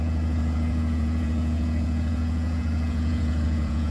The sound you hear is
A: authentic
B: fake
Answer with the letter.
B